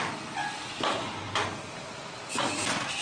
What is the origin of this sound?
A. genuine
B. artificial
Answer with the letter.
A